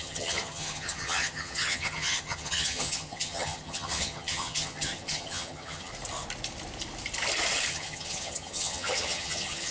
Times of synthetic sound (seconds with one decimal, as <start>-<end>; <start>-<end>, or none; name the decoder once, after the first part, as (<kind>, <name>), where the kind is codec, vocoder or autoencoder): 0.0-5.9 (vocoder, HiFi-GAN); 7.7-9.7